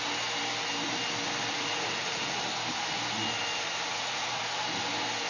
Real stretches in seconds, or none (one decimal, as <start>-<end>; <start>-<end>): 0.0-1.5; 2.4-3.9; 4.4-5.3